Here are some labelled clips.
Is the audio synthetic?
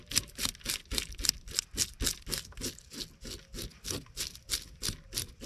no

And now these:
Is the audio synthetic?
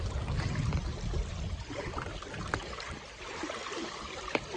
no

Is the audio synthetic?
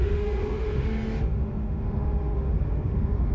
yes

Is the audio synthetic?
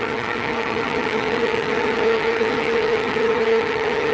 yes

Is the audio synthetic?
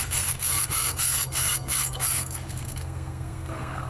yes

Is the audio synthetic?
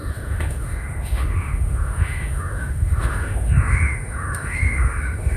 yes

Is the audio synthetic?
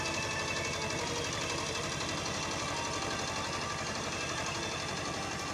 no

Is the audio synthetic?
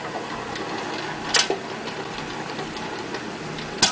no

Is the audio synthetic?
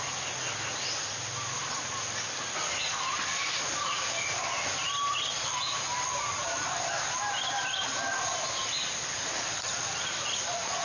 no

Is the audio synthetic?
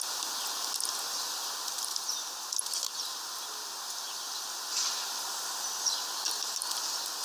no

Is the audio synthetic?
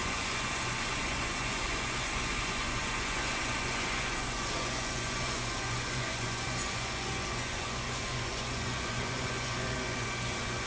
yes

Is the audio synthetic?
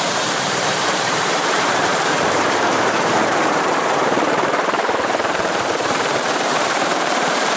yes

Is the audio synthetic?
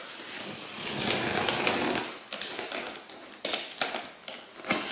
no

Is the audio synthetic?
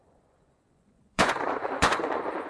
yes